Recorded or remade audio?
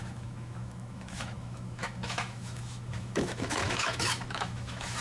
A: remade